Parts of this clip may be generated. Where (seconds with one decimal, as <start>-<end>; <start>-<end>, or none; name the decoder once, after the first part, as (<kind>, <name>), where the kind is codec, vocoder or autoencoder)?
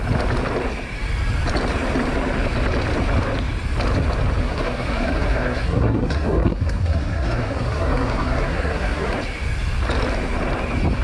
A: 4.4-9.2 (codec, SNAC)